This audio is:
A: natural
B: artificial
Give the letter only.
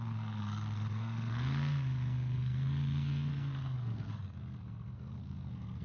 B